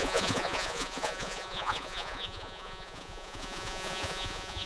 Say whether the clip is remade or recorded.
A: remade